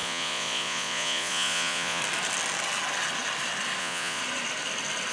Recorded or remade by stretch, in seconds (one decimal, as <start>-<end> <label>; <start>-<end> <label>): 0.0-2.0 remade; 2.0-3.8 recorded; 3.8-4.2 remade; 4.2-5.1 recorded